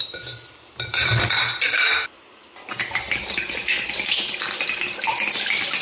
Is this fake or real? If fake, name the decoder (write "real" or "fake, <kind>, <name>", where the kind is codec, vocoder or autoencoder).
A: fake, vocoder, BigVGAN v2